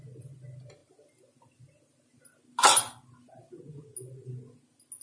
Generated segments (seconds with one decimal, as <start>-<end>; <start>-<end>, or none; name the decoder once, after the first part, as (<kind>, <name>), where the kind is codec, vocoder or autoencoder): none